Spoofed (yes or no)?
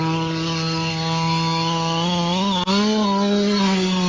no